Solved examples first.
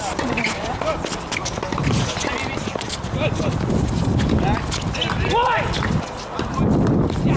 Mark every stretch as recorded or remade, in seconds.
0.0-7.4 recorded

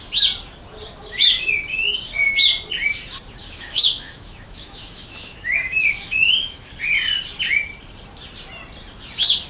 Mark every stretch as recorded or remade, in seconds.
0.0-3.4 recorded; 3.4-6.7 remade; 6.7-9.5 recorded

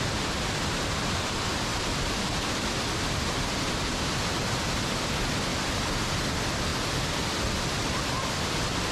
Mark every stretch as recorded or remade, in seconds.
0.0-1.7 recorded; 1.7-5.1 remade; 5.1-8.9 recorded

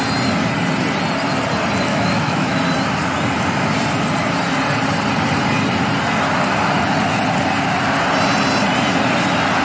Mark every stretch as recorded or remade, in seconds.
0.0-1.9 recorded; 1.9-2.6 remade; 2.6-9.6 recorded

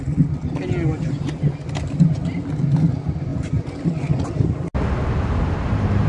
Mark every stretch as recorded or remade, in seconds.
0.0-6.1 recorded

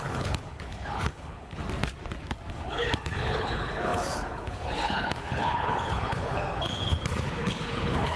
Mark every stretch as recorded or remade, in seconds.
0.0-1.6 remade; 1.6-2.5 recorded; 2.5-8.2 remade

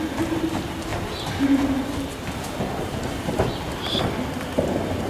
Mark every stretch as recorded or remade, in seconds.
0.0-5.1 recorded

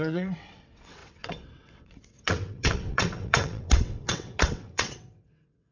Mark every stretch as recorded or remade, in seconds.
0.0-5.7 remade